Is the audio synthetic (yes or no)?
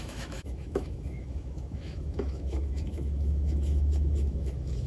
yes